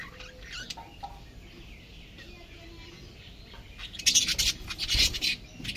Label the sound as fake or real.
real